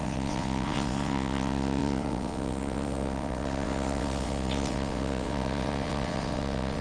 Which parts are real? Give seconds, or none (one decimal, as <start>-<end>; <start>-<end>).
none